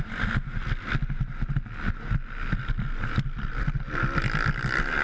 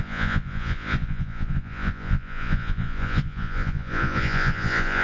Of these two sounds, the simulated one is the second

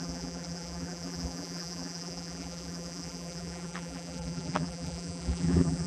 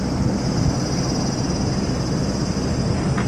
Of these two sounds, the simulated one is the first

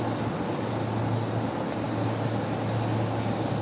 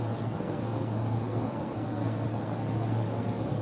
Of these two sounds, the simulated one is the second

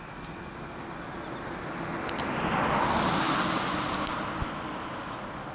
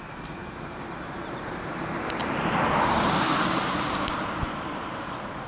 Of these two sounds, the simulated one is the second